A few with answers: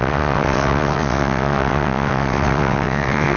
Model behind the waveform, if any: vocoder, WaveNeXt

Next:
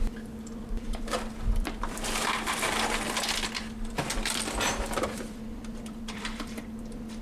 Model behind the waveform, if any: vocoder, BigVGAN v2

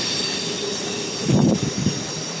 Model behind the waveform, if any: vocoder, BigVGAN v2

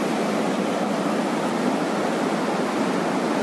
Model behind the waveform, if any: none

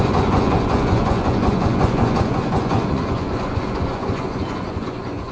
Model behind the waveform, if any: vocoder, Vocos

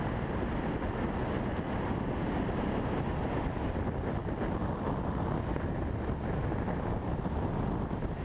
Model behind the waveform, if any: none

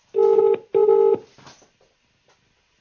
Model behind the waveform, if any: none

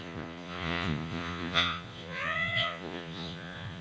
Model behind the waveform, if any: vocoder, Vocos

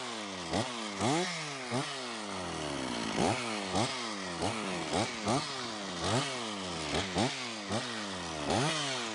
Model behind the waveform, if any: none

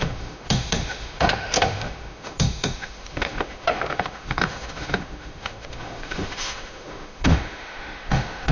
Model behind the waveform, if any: autoencoder, DAC-VAE